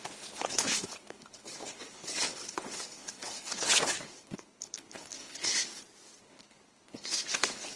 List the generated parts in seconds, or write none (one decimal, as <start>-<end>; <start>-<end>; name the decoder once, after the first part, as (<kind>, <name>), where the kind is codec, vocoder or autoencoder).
0.0-5.7 (codec, HILCodec); 6.2-7.8